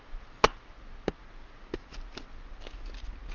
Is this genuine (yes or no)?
yes